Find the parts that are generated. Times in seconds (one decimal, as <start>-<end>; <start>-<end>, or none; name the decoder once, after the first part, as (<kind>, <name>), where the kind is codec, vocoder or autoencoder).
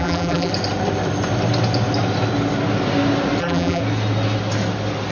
0.0-0.5 (vocoder, BigVGAN v2); 3.4-3.8